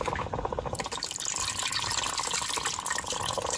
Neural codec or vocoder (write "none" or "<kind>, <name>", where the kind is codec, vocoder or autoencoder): none